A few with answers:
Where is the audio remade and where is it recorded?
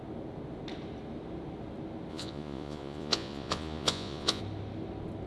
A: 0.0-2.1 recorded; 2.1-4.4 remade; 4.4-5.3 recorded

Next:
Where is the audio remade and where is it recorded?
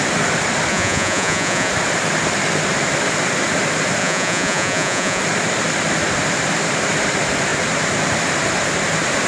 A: 0.0-0.7 recorded; 0.7-1.7 remade; 1.7-4.0 recorded; 4.0-5.2 remade; 5.2-9.3 recorded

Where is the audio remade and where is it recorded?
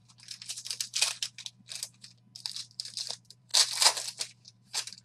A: 0.0-2.7 recorded; 2.7-3.5 remade; 3.5-4.2 recorded; 4.2-5.0 remade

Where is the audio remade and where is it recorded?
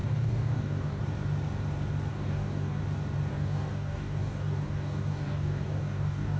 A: 0.0-1.0 remade; 1.0-2.1 recorded; 2.1-2.8 remade; 2.8-3.3 recorded; 3.3-6.4 remade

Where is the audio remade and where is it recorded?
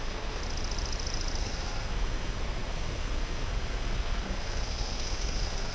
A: 0.0-0.4 remade; 0.4-1.4 recorded; 1.4-5.7 remade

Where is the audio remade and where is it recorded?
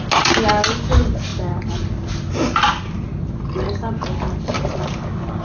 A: 0.0-5.4 recorded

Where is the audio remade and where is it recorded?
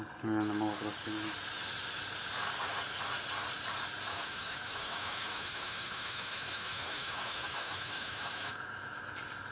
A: 0.0-4.1 recorded; 4.1-9.0 remade; 9.0-9.5 recorded